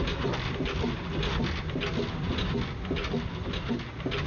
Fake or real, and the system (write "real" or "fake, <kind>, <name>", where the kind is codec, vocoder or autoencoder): real